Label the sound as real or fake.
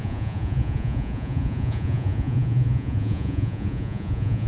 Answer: fake